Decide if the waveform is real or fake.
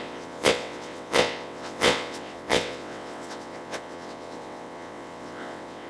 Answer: fake